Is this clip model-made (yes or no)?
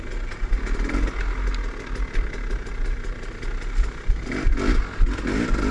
no